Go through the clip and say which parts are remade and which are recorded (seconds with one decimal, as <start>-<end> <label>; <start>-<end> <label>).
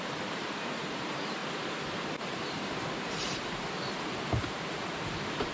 0.0-1.4 remade; 1.4-2.5 recorded; 2.5-5.5 remade